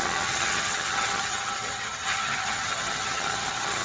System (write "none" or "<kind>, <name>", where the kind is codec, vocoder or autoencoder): vocoder, HiFi-GAN